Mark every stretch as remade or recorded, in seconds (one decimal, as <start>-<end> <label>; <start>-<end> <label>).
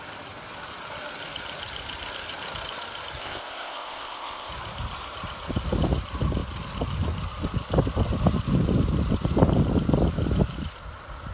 0.0-3.2 recorded; 3.2-4.5 remade; 4.5-11.3 recorded